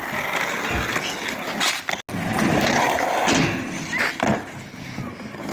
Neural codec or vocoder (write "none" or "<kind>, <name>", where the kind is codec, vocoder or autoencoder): none